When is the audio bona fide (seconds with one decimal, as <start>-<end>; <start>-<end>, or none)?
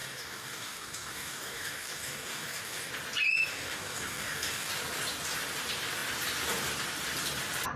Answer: 2.9-3.5; 4.7-7.8